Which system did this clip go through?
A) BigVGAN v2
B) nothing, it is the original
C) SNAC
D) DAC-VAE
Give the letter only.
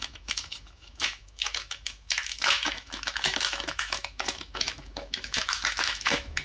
D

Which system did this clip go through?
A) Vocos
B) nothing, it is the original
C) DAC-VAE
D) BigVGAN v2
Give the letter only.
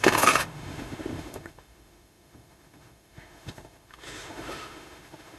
C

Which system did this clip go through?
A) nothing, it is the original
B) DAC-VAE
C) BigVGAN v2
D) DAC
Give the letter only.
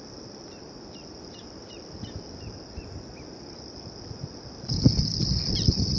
A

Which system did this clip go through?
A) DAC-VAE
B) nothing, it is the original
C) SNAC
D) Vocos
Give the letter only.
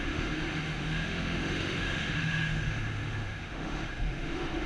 A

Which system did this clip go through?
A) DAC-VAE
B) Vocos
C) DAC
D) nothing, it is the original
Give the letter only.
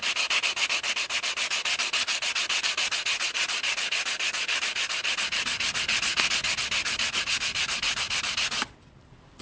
D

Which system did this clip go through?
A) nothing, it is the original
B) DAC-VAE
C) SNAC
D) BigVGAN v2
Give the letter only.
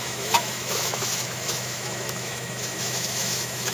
B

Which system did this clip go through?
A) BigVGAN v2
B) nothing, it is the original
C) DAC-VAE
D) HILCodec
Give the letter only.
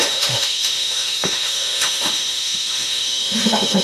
C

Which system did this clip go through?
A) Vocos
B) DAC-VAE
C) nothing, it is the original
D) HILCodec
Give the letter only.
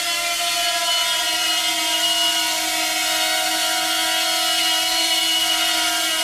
C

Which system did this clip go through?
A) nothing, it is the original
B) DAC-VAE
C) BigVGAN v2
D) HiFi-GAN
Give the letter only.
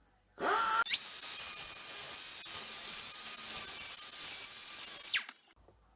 A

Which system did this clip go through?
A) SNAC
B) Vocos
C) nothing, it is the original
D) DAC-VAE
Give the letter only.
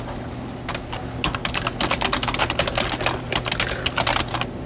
C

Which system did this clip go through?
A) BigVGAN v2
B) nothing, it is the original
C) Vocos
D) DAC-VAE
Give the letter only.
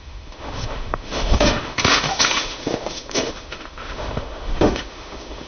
D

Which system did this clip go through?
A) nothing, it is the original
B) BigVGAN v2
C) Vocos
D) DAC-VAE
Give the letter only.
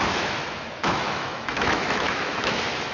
D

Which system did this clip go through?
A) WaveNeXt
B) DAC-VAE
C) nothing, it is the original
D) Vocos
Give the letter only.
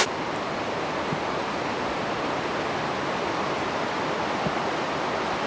C